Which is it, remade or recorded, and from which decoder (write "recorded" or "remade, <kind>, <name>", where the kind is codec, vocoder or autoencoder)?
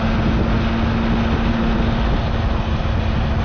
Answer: recorded